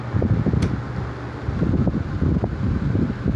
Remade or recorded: recorded